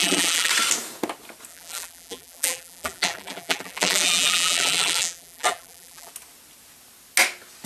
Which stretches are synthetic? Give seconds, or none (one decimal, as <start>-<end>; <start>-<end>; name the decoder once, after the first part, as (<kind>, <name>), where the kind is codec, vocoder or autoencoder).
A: 0.0-0.5 (vocoder, BigVGAN v2); 1.5-6.1